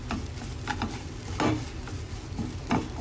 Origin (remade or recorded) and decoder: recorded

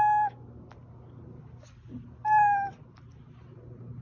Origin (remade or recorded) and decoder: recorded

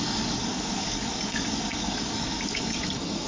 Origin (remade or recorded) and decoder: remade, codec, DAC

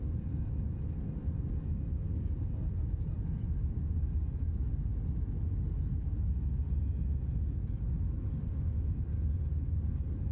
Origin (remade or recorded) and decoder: recorded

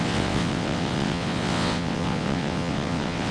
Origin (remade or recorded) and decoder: remade, vocoder, WaveNeXt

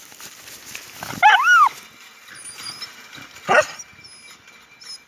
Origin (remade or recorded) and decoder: recorded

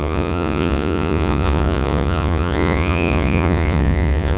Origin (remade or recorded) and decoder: remade, vocoder, Vocos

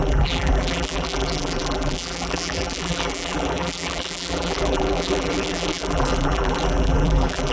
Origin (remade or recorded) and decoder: remade, vocoder, BigVGAN v2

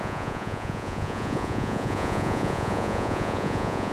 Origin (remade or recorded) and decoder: remade, vocoder, Vocos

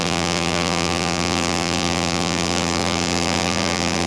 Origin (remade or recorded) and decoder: remade, vocoder, BigVGAN v2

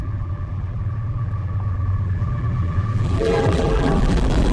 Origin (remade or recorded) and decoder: remade, vocoder, BigVGAN v2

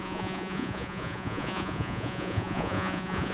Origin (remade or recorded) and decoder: remade, vocoder, Vocos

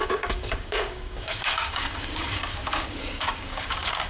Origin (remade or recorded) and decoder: remade, codec, DAC